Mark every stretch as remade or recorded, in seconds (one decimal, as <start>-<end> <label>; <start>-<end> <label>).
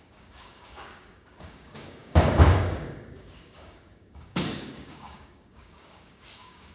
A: 0.0-6.7 remade